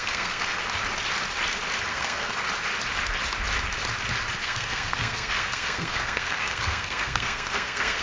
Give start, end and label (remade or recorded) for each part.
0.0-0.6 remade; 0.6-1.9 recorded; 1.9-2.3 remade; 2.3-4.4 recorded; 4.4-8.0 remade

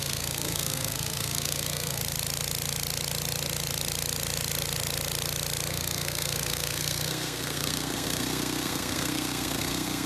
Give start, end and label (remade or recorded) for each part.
0.0-2.0 remade; 2.0-5.7 recorded; 5.7-10.1 remade

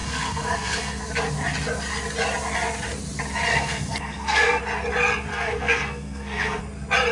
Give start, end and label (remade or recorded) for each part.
0.0-1.0 remade; 1.0-3.5 recorded; 3.5-4.6 remade; 4.6-5.3 recorded; 5.3-6.6 remade; 6.6-7.1 recorded